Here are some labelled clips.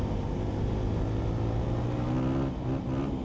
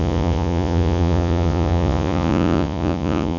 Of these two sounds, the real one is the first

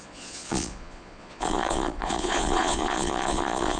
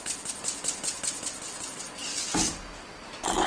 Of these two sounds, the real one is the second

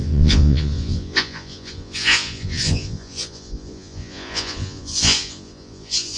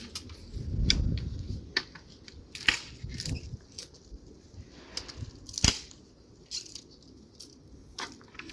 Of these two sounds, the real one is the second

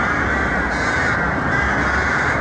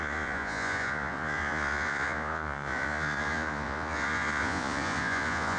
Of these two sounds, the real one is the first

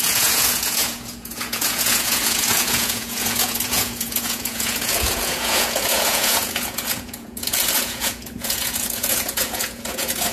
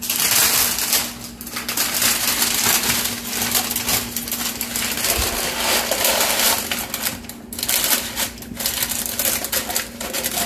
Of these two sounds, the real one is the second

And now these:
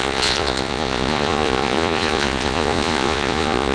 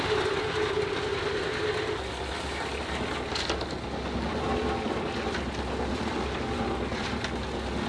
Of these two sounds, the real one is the second